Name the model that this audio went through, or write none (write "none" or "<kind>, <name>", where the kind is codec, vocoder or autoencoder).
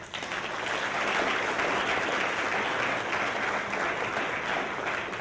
none